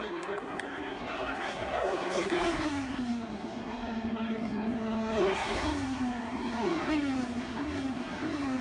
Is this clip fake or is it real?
fake